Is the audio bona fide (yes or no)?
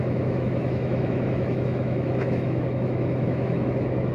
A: no